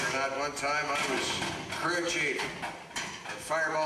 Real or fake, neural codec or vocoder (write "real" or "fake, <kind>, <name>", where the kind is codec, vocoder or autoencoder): real